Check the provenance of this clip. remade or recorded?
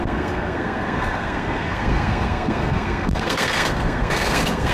remade